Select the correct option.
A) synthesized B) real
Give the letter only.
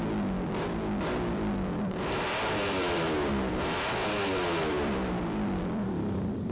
A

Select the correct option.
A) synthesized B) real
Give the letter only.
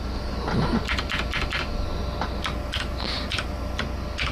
B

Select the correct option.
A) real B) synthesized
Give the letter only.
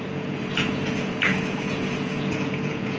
B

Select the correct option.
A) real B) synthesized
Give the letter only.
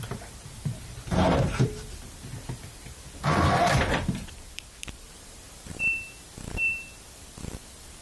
B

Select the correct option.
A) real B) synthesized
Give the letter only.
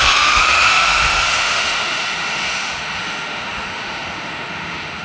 B